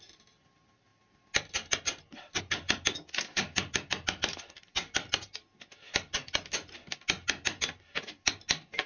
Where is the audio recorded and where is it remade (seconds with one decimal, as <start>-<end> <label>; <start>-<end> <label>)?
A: 0.0-8.9 recorded

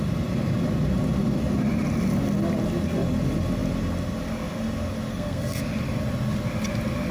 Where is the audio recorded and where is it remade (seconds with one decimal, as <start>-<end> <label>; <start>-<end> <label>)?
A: 0.0-5.1 recorded; 5.1-5.6 remade; 5.6-7.1 recorded

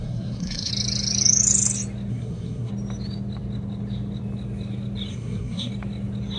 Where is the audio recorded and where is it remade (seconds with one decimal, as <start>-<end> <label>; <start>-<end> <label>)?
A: 0.0-0.7 remade; 0.7-2.1 recorded; 2.1-2.7 remade; 2.7-5.1 recorded; 5.1-5.7 remade; 5.7-6.4 recorded

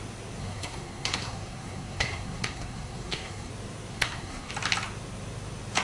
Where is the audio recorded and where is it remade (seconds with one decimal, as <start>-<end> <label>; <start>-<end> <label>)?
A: 0.0-0.4 recorded; 0.4-3.5 remade; 3.5-3.9 recorded; 3.9-4.5 remade; 4.5-5.8 recorded

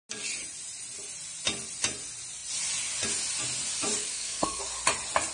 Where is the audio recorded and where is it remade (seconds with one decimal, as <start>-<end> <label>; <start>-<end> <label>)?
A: 0.0-4.0 recorded; 4.0-4.6 remade; 4.6-5.3 recorded

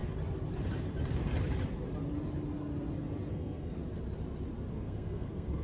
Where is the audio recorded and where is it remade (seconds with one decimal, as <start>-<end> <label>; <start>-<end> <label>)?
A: 0.0-3.3 recorded; 3.3-3.8 remade; 3.8-4.7 recorded; 4.7-5.6 remade

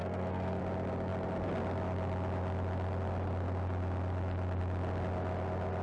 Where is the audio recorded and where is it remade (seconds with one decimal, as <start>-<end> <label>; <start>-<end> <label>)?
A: 0.0-0.6 remade; 0.6-5.8 recorded